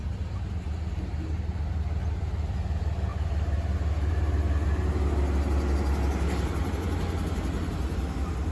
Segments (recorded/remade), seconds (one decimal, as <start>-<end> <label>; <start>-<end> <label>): 0.0-8.5 recorded